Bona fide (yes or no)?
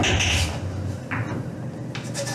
yes